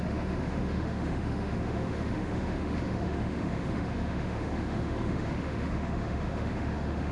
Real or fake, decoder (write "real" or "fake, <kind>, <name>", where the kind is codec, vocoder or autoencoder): fake, autoencoder, DAC-VAE